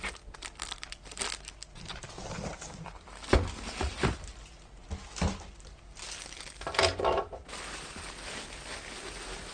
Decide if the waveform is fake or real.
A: real